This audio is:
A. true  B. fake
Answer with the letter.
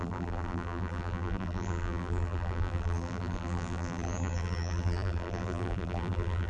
B